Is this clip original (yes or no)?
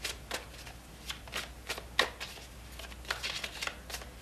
yes